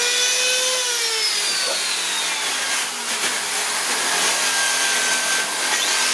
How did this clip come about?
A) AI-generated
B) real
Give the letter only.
B